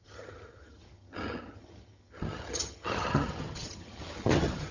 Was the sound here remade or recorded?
remade